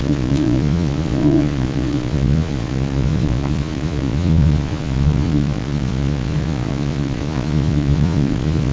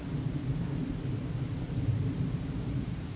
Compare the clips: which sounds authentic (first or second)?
second